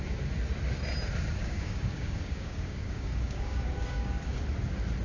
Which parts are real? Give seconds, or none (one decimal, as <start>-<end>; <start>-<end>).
0.0-1.4; 4.4-5.0